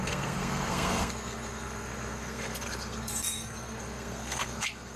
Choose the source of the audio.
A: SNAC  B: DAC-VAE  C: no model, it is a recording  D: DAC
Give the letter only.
A